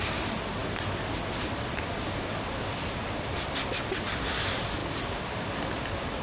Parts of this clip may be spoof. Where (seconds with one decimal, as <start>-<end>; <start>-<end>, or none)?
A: 0.0-6.2